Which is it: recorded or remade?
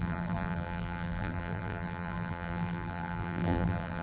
remade